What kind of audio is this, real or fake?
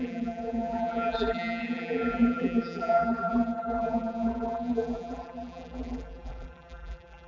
fake